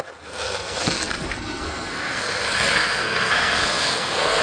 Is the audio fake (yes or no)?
yes